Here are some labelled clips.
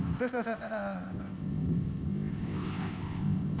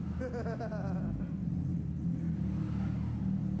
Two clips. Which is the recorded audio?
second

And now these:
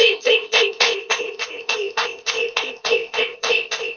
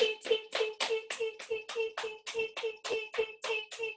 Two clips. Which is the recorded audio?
second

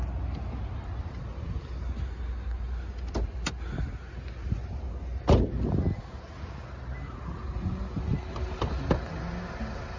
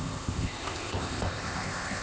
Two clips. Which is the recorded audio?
first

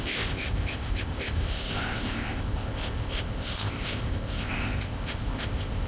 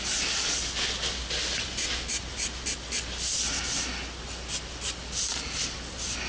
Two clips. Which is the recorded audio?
second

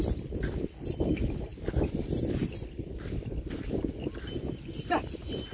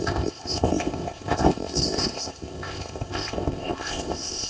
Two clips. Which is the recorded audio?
first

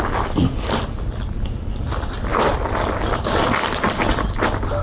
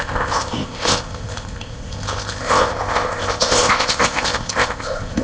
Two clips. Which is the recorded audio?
first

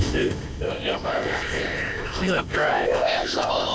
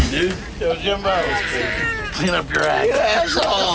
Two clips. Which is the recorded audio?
second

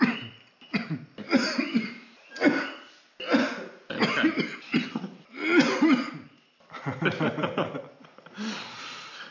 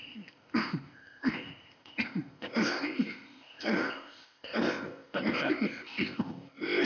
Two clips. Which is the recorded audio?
first